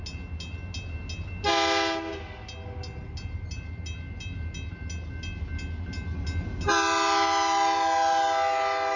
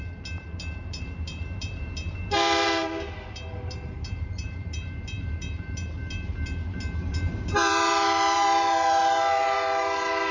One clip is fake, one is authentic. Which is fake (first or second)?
second